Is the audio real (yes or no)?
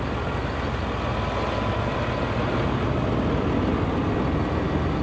yes